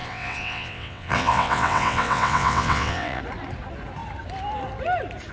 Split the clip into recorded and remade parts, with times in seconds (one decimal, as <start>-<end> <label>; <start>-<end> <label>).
0.0-3.2 remade; 3.2-5.3 recorded